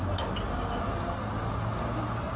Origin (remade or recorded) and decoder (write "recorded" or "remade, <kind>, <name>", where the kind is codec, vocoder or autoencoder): recorded